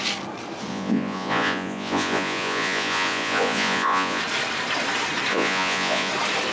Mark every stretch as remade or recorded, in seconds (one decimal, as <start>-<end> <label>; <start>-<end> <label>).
0.0-0.7 recorded; 0.7-4.2 remade; 4.2-5.3 recorded; 5.3-6.1 remade; 6.1-6.5 recorded